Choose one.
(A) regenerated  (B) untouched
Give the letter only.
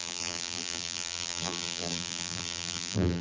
A